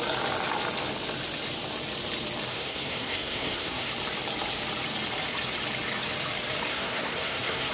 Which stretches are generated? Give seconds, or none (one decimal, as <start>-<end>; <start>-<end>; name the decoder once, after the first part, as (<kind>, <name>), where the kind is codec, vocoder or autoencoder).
2.5-3.9 (codec, SNAC); 6.7-7.7